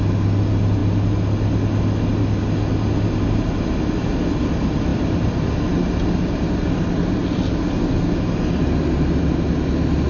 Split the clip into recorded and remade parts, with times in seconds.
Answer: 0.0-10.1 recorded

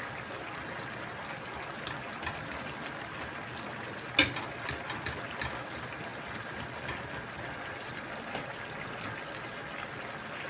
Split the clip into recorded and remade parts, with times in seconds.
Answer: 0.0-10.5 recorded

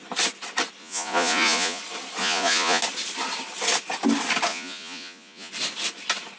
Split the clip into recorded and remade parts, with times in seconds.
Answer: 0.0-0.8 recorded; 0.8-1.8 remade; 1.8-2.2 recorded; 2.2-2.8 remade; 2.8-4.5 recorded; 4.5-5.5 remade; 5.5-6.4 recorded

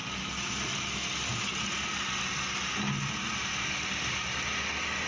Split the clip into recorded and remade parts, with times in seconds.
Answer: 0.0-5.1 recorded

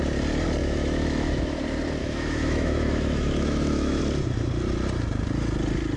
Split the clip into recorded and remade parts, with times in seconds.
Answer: 0.0-0.6 recorded; 0.6-1.6 remade; 1.6-2.0 recorded; 2.0-4.0 remade; 4.0-6.0 recorded

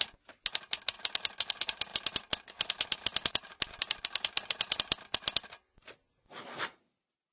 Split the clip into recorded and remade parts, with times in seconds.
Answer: 0.0-7.3 recorded

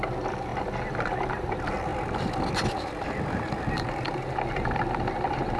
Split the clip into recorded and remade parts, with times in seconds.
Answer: 0.0-5.6 recorded